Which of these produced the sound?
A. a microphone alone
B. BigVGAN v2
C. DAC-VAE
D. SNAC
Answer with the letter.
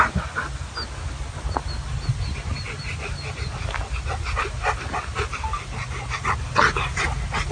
A